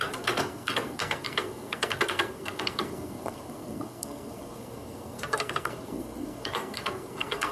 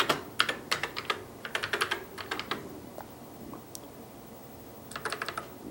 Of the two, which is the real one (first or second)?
second